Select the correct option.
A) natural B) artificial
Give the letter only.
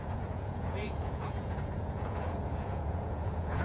B